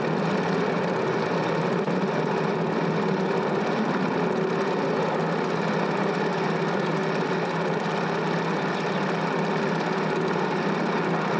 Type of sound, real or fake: real